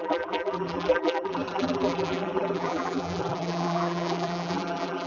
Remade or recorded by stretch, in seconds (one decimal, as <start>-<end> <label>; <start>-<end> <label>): 0.0-5.1 remade